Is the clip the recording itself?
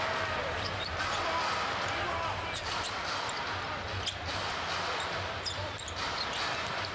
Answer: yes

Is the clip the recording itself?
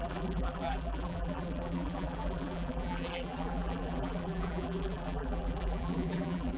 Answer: no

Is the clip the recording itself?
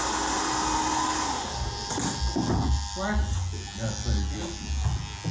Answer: yes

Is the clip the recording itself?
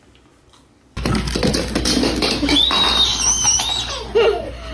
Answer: yes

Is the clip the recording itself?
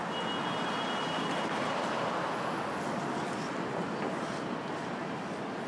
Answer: yes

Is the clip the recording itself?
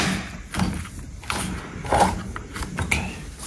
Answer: yes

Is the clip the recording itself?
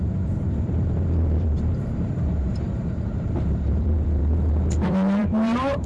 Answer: no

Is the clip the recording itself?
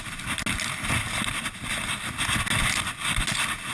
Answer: yes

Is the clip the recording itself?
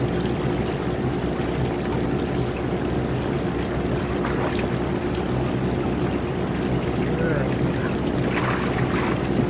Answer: yes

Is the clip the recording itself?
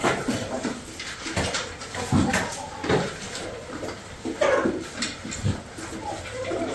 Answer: yes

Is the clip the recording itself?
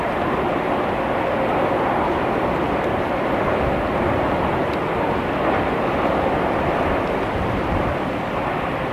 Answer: yes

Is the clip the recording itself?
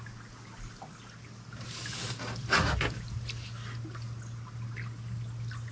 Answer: yes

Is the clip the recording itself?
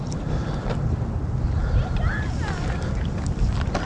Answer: yes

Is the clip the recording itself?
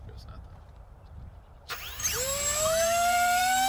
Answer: no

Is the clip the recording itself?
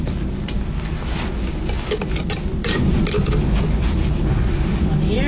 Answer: yes